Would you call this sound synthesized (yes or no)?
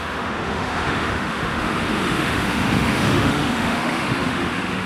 yes